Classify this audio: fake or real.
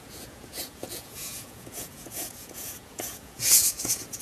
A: fake